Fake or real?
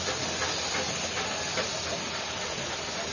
real